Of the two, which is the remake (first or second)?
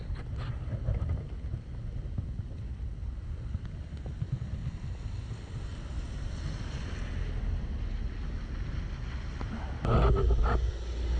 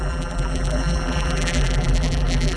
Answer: second